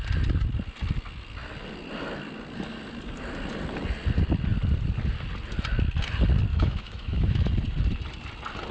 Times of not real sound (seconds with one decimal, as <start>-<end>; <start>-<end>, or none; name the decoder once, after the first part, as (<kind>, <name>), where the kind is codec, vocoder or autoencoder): 6.5-7.5 (autoencoder, DAC-VAE)